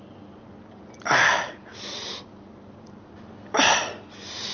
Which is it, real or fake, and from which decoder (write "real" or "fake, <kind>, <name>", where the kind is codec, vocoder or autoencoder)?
real